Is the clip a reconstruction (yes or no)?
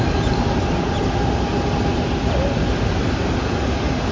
no